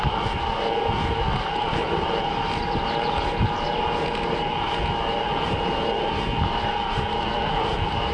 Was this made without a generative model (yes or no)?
yes